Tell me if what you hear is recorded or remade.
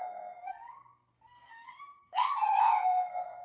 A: remade